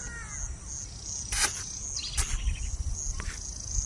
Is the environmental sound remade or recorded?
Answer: recorded